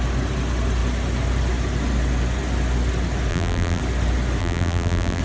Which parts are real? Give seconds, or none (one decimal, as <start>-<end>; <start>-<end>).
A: 0.0-3.3; 3.8-4.4